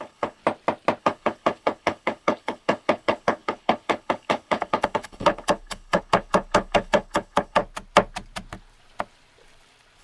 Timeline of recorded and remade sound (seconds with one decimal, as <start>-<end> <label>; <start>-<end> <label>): 0.0-0.4 remade; 0.4-1.0 recorded; 1.0-7.6 remade; 7.6-10.0 recorded